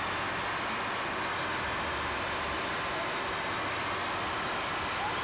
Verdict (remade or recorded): recorded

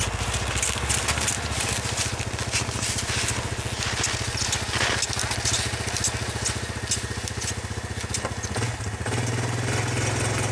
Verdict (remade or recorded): recorded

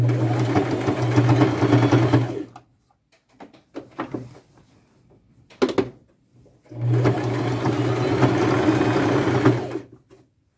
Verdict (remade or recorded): recorded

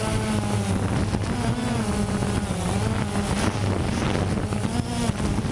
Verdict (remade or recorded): recorded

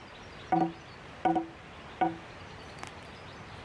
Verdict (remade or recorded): recorded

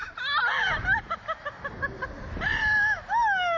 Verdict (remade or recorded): recorded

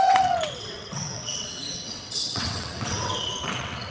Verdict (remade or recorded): remade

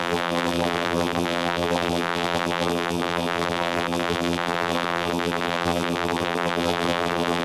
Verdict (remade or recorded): remade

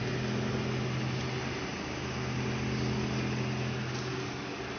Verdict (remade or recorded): recorded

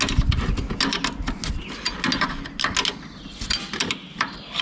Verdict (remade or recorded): recorded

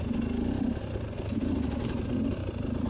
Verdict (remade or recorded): recorded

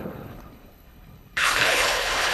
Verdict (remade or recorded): remade